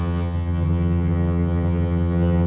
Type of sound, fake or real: fake